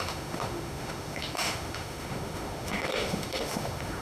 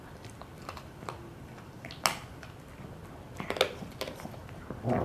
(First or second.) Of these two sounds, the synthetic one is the first